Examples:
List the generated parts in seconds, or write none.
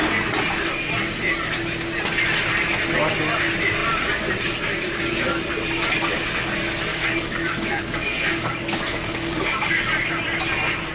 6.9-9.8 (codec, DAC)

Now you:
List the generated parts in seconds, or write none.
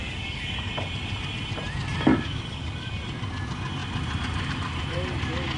0.0-0.7 (codec, DAC); 2.1-3.0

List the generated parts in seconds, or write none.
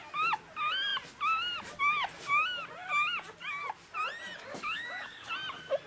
4.5-5.3 (codec, DAC)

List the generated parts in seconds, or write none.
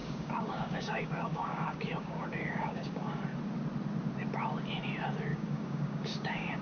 0.0-3.1 (codec, DAC); 5.3-6.6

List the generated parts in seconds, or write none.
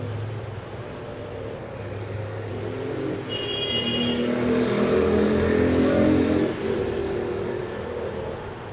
1.6-2.5 (codec, DAC); 4.1-6.4; 7.0-7.6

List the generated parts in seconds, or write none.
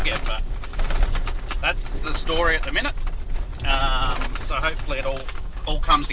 5.2-6.1 (codec, DAC)